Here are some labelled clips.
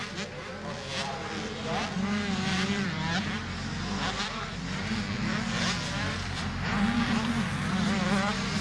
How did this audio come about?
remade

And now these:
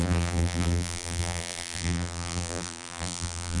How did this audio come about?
remade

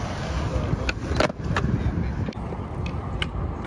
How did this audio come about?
recorded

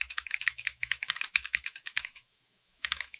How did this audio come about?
remade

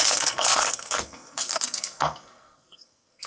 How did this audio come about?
remade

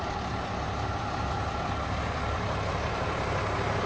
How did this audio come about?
remade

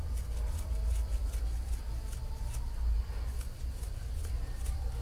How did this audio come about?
recorded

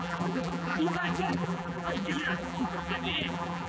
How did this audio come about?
remade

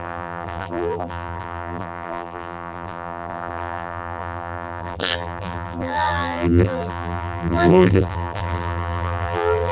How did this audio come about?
remade